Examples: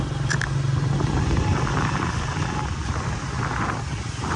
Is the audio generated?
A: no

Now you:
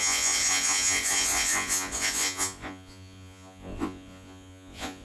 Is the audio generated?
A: yes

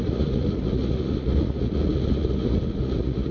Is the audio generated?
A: yes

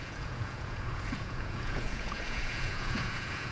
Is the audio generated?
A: yes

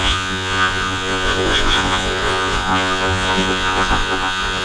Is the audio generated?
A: yes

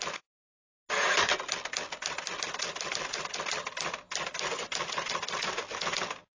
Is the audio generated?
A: no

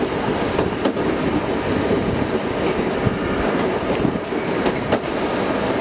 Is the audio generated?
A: no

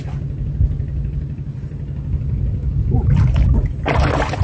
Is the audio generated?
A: no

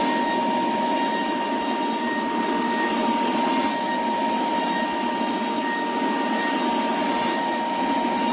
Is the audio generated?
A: no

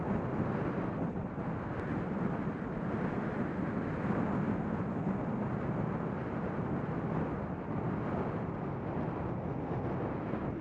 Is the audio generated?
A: no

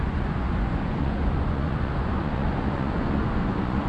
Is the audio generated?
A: yes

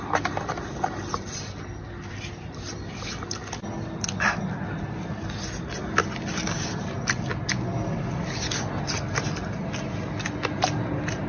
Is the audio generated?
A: no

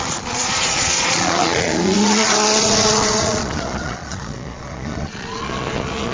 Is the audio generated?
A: yes